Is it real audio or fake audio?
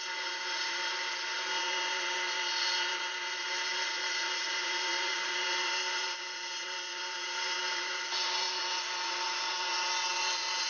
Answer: fake